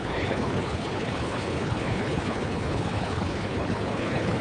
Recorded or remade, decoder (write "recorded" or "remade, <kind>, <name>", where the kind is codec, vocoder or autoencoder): remade, codec, HILCodec